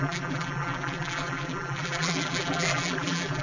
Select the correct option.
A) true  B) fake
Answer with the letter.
B